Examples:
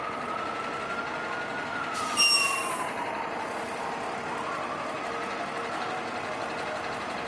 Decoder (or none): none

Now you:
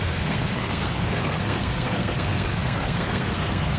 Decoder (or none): codec, SNAC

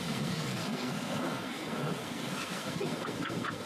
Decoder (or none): codec, SNAC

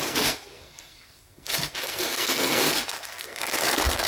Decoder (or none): codec, SNAC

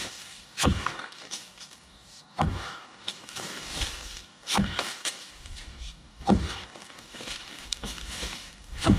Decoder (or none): codec, DAC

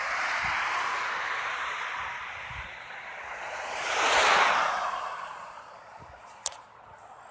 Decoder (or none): none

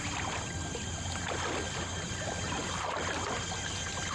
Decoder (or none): none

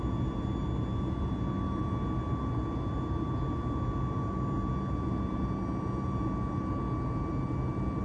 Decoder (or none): none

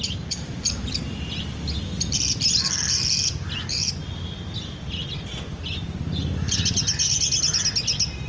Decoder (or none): none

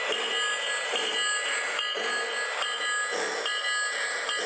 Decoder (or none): none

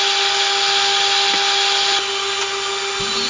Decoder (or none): none